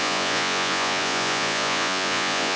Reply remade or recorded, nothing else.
remade